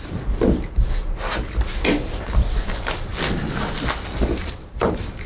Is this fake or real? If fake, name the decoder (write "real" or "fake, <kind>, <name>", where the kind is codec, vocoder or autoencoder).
real